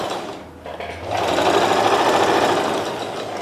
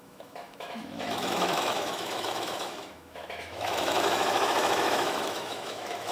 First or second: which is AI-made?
second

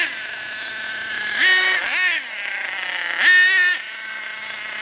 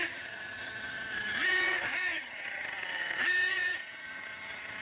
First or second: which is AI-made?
second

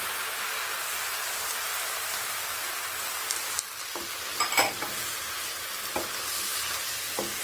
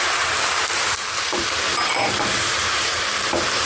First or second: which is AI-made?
second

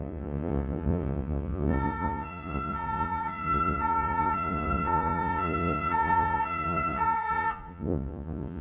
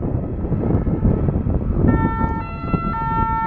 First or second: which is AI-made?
first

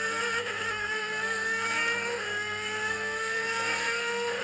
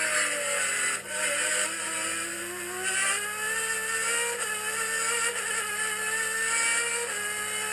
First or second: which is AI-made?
first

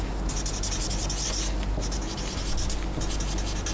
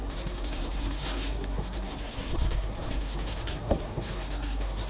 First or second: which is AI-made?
second